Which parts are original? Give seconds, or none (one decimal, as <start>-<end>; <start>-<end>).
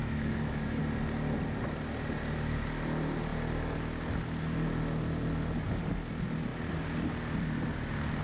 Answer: 0.8-8.2